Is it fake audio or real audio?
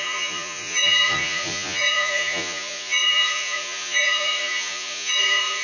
fake